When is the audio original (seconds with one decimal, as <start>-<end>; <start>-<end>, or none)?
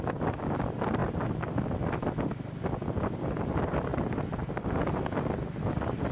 0.0-6.1